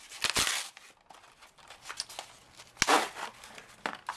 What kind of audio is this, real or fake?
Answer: real